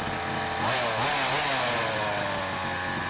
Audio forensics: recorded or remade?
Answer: recorded